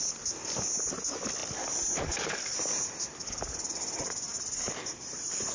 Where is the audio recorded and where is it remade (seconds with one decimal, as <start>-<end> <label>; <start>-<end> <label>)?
0.0-5.5 recorded